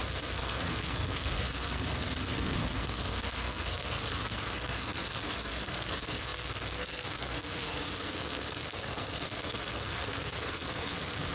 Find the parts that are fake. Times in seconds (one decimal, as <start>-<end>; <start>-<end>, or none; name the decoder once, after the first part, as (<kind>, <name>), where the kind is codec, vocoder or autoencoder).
0.0-11.3 (codec, SNAC)